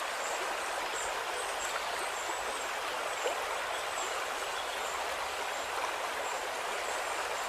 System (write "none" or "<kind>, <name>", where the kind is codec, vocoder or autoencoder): none